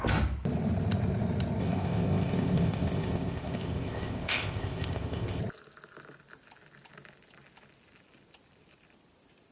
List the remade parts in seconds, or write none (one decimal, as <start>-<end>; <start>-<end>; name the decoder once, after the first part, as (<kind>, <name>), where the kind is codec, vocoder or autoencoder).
1.6-5.4 (codec, ZipCodec)